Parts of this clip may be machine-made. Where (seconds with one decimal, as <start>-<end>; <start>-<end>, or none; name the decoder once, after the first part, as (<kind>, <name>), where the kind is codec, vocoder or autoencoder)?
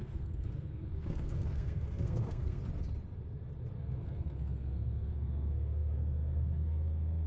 0.0-2.6 (codec, SNAC); 3.8-7.3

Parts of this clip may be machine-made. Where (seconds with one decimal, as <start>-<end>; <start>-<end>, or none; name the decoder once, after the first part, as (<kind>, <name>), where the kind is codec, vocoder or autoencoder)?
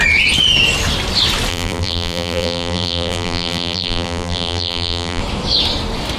1.5-5.2 (vocoder, BigVGAN v2)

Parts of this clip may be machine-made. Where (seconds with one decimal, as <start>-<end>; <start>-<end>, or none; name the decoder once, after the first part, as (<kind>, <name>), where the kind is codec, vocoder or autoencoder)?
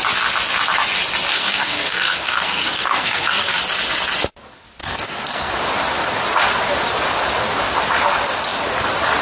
1.3-3.6 (codec, SNAC); 4.8-5.5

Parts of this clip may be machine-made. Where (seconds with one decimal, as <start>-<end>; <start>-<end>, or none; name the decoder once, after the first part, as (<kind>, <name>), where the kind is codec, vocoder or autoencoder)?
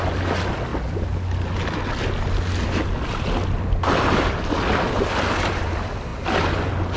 none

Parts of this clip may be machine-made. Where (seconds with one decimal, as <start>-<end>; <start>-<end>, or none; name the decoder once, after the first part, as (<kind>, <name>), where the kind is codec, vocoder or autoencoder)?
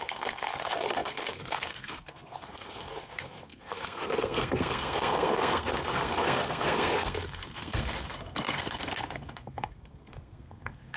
0.0-11.0 (codec, SNAC)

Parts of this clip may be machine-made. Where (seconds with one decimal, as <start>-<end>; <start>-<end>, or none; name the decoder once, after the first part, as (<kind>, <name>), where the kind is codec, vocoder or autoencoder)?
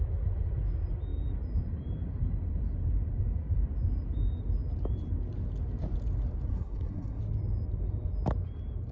6.5-7.2 (codec, SNAC)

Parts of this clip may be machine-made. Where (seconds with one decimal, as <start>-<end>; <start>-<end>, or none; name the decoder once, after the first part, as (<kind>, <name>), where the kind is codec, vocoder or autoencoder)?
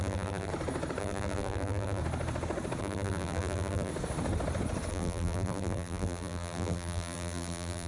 0.0-0.5 (vocoder, BigVGAN v2); 1.0-2.0; 2.8-3.9; 4.9-7.9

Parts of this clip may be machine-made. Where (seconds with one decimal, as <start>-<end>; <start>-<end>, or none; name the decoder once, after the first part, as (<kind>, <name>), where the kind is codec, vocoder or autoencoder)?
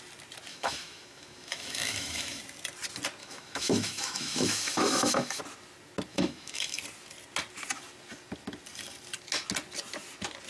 0.5-2.4 (autoencoder, DAC-VAE); 3.2-5.4; 6.1-6.8